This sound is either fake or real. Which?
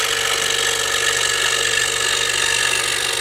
real